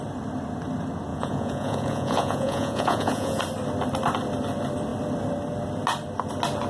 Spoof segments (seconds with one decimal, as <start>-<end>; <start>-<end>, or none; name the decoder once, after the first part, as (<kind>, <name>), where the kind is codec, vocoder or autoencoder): 1.1-3.4 (vocoder, Vocos)